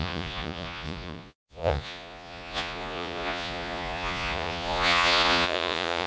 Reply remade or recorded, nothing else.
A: remade